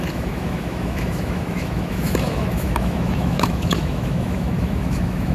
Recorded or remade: remade